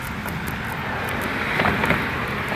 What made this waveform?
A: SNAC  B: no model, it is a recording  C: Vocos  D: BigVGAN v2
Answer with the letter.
B